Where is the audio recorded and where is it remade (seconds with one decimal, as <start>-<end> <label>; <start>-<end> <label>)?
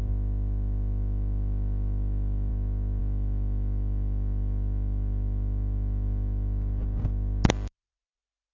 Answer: 0.0-8.5 recorded